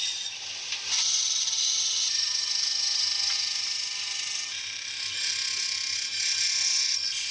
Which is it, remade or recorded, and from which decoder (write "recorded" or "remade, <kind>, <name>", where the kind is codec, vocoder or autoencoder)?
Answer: recorded